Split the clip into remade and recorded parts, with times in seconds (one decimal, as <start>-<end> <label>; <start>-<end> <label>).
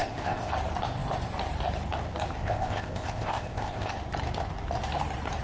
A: 0.0-0.5 remade; 0.5-2.4 recorded; 2.4-3.9 remade; 3.9-5.4 recorded